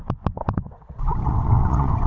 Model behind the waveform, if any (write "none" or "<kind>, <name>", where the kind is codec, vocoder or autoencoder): vocoder, WaveNeXt